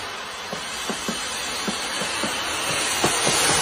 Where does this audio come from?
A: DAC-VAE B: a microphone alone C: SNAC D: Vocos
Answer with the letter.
B